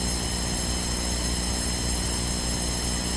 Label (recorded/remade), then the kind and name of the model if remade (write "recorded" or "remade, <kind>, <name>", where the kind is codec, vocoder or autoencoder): recorded